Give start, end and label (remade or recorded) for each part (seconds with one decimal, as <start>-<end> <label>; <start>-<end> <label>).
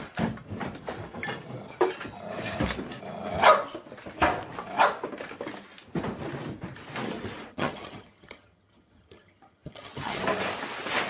0.0-7.5 recorded; 7.5-10.2 remade; 10.2-11.1 recorded